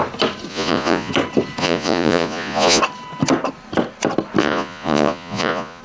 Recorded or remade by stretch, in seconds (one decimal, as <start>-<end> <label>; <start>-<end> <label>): 0.0-0.5 recorded; 0.5-1.1 remade; 1.1-1.6 recorded; 1.6-2.8 remade; 2.8-4.4 recorded; 4.4-5.8 remade